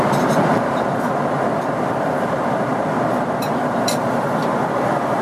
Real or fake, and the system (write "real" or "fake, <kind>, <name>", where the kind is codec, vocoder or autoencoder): fake, vocoder, BigVGAN v2